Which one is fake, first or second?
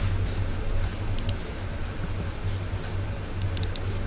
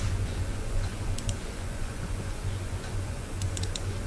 second